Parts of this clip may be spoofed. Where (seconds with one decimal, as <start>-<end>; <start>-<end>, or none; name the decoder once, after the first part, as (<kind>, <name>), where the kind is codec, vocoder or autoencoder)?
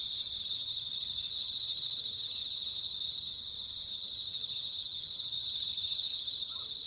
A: 0.4-3.4 (vocoder, HiFi-GAN); 3.9-6.9